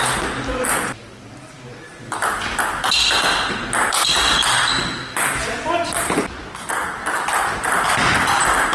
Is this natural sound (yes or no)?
yes